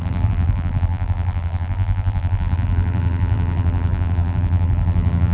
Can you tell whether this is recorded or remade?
remade